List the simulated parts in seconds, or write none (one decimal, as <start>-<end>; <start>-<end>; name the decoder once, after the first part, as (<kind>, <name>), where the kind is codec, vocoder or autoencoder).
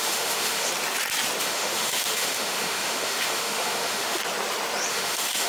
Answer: 0.0-0.7 (autoencoder, DAC-VAE); 1.4-4.2; 4.9-5.5